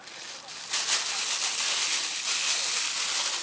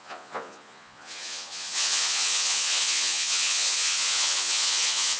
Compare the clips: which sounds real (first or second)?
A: first